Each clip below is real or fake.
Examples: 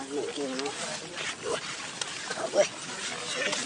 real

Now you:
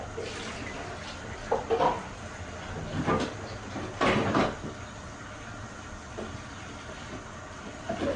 real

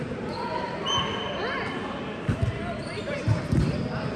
real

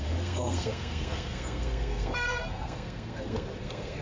fake